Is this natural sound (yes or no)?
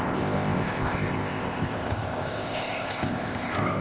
no